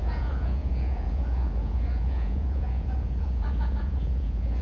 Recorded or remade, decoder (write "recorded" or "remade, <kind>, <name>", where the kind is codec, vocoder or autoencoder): remade, vocoder, Vocos